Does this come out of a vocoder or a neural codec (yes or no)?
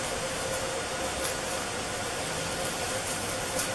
no